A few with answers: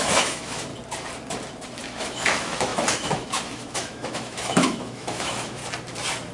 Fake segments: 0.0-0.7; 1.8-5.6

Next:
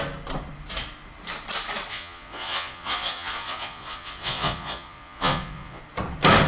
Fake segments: 1.9-5.8

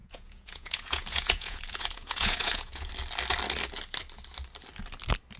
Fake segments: 0.0-2.9

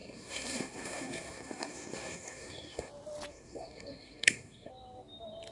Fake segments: 0.0-2.9; 3.3-4.7

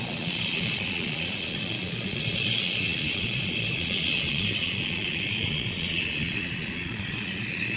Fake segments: 0.0-7.8

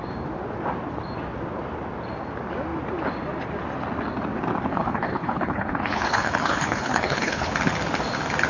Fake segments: 4.7-7.5

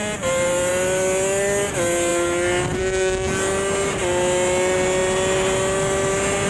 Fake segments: none

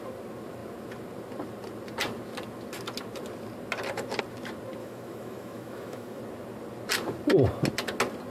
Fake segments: 4.8-6.2